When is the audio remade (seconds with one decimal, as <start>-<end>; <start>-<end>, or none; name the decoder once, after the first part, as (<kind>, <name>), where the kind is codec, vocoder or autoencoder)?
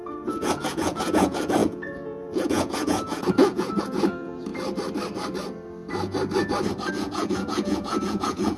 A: 0.0-4.5 (vocoder, Vocos); 6.9-8.6